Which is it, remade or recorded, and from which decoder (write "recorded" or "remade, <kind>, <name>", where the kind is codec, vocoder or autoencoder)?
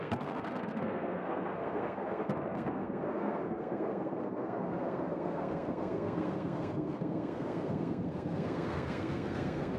remade, codec, SNAC